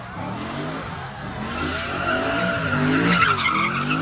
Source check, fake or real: real